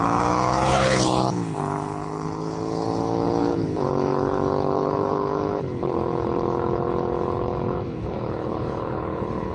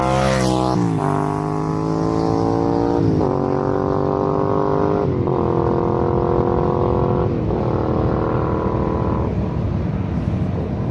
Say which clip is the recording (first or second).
second